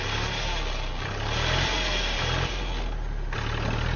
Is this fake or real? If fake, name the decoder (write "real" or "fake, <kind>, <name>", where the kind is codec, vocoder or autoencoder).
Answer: real